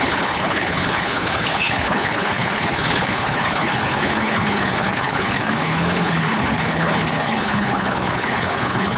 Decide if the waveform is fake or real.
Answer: fake